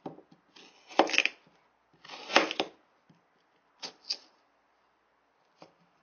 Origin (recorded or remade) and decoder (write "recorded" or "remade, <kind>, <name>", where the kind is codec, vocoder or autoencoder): recorded